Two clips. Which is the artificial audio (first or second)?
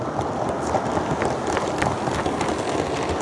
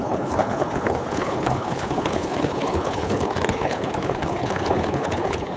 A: second